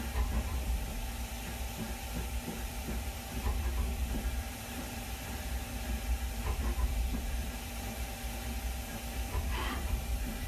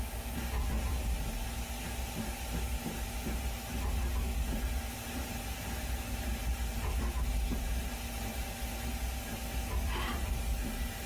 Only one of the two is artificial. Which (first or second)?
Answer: first